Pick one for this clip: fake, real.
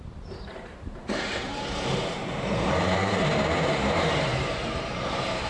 fake